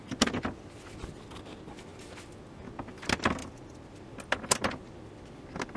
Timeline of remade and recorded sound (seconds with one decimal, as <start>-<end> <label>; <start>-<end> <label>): 0.0-5.8 recorded